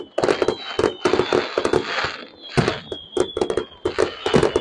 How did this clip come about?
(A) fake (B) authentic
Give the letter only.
B